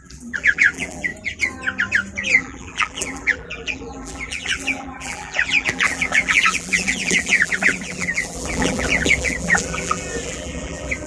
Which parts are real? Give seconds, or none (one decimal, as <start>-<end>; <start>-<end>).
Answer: 1.1-2.3